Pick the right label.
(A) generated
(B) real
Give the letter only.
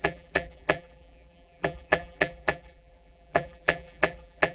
A